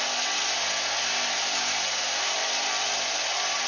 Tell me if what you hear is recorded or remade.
recorded